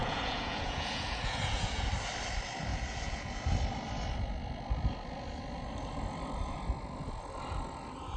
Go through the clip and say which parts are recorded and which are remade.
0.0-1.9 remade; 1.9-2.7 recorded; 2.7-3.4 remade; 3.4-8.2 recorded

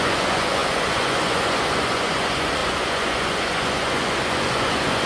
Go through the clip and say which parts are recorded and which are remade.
0.0-5.1 remade